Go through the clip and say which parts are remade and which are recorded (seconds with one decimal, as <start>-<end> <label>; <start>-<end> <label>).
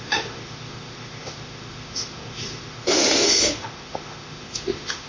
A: 0.0-5.1 remade